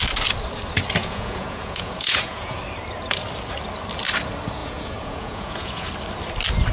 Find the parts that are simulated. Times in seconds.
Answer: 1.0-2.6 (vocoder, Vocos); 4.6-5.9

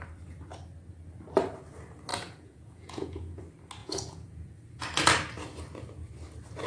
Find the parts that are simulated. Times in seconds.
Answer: 2.1-3.4 (vocoder, Vocos); 3.8-4.5

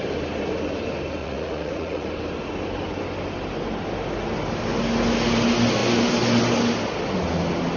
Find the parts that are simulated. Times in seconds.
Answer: 1.2-2.1 (vocoder, Vocos)

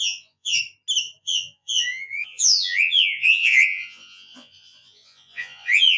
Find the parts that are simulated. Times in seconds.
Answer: 0.0-0.6 (vocoder, Vocos); 1.2-6.0

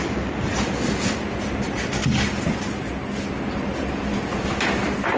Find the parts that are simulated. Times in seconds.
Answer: none

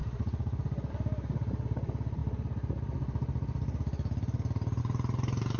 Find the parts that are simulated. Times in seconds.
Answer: none